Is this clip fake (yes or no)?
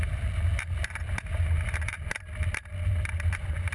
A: no